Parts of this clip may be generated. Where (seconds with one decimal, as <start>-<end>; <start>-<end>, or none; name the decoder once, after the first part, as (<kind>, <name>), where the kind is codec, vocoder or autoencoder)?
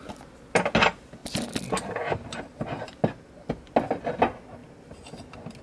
none